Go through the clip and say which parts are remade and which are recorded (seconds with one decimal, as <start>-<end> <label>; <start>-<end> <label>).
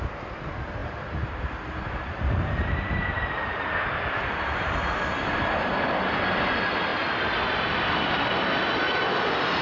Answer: 0.0-9.6 recorded